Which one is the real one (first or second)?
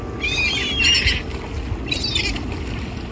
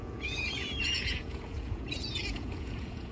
first